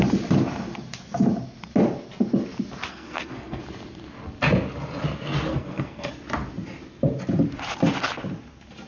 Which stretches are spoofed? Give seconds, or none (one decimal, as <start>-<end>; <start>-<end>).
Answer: 2.9-3.6; 5.5-6.1